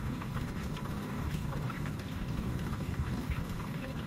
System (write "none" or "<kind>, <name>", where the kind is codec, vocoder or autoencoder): codec, DAC